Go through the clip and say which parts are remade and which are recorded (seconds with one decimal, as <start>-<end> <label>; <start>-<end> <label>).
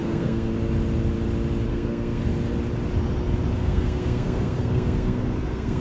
0.0-0.5 remade; 0.5-1.7 recorded; 1.7-2.2 remade; 2.2-3.5 recorded; 3.5-5.8 remade